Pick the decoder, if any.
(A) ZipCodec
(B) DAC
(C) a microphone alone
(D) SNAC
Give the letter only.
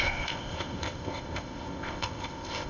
A